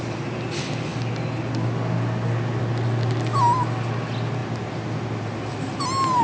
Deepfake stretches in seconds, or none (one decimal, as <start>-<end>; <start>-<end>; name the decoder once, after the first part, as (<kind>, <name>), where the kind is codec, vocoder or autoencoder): none